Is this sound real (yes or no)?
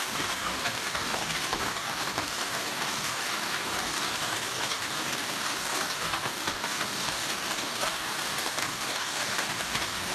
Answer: no